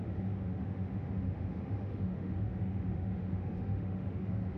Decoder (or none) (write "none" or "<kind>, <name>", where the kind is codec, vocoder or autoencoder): autoencoder, DAC-VAE